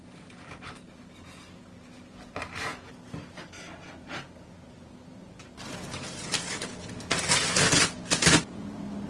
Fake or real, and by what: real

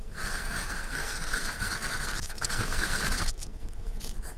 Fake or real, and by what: fake, codec, SNAC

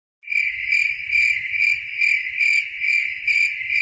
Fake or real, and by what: real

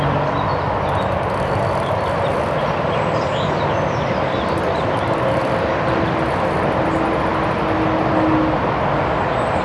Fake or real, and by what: real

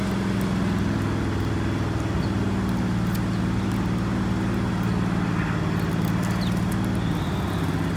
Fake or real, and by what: real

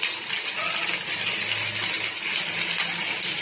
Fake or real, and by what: real